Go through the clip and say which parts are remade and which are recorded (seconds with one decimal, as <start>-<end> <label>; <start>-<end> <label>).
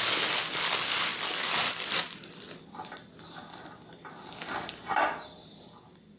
0.0-6.2 recorded